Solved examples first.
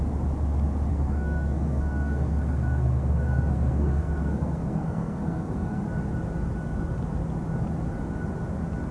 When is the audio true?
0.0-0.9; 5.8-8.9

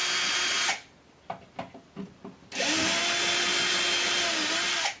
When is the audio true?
0.0-5.0

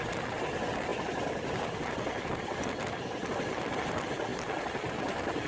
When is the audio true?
0.0-5.5

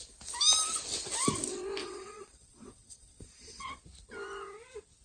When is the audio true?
0.0-1.8; 3.8-5.0

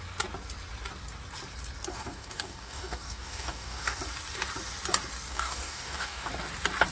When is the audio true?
0.0-1.9; 4.0-5.3; 6.3-6.9

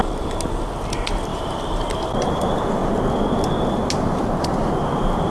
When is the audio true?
0.0-1.3; 2.4-5.3

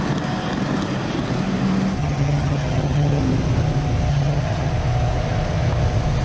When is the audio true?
0.0-2.0; 3.2-4.1; 4.7-6.2

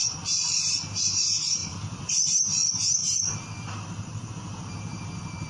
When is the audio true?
1.1-1.6; 2.3-3.0; 4.3-5.5